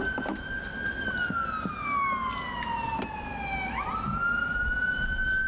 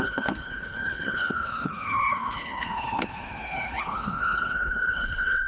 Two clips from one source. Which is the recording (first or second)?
first